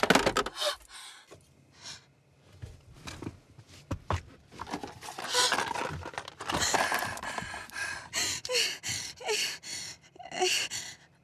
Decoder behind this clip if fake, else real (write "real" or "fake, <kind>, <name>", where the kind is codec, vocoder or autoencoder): real